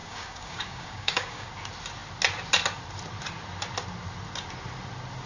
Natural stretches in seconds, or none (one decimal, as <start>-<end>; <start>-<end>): 1.5-5.3